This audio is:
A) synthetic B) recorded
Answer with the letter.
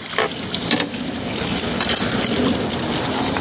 B